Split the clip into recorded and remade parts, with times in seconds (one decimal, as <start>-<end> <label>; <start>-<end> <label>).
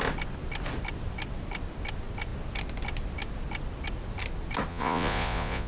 0.0-4.7 recorded; 4.7-5.7 remade